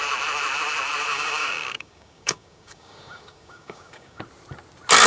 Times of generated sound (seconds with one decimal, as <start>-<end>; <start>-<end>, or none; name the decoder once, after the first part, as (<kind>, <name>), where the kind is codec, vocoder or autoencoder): 1.1-4.2 (codec, DAC)